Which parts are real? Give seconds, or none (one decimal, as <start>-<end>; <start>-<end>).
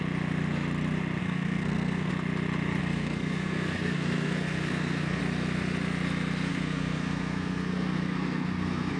0.0-1.2; 2.1-2.8; 5.2-6.5